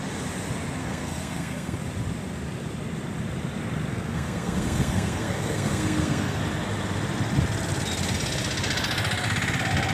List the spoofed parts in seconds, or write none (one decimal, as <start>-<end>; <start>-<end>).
0.8-1.8; 3.9-6.4